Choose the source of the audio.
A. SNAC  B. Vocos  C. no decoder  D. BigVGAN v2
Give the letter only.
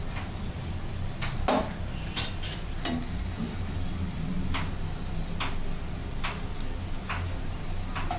C